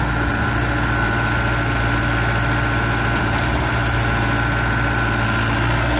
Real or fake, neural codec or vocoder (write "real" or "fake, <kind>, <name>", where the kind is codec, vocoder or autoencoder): fake, vocoder, BigVGAN v2